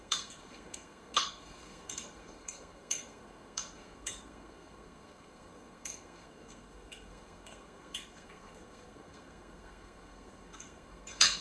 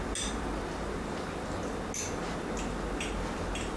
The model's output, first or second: first